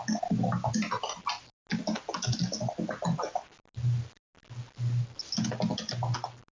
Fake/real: real